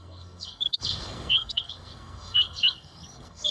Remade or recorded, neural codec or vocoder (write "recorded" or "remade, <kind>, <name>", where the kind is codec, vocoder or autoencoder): remade, codec, SNAC